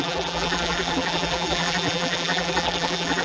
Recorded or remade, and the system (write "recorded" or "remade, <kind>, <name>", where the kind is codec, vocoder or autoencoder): remade, vocoder, BigVGAN v2